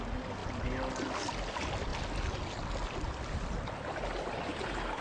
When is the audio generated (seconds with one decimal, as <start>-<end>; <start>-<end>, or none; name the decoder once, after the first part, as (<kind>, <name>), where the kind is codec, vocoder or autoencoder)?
none